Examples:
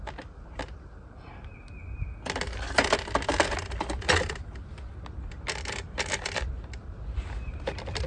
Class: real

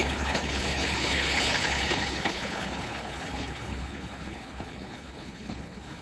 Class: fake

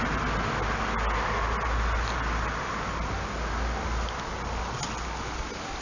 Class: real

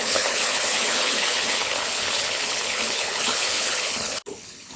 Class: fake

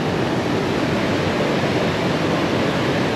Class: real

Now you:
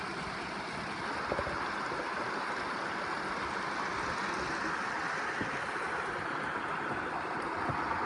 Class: real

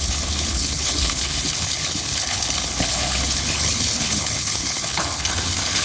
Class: fake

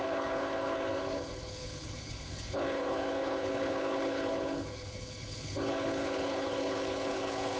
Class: fake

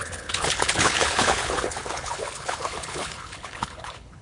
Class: fake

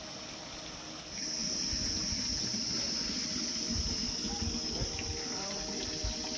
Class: real